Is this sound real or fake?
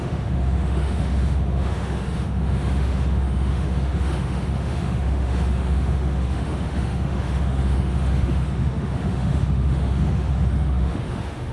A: fake